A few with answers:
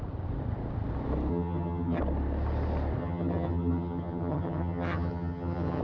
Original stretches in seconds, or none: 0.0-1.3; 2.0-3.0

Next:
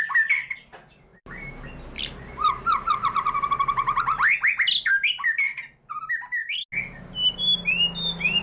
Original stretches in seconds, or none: 0.0-8.4

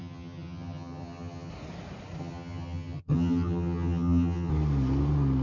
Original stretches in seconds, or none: 1.5-2.2; 4.5-5.4